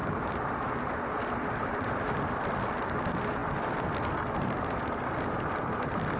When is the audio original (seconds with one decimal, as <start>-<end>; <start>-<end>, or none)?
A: 0.7-1.6; 2.5-6.2